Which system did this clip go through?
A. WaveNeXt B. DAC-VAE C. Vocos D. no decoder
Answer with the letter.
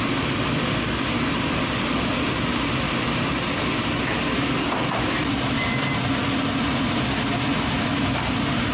D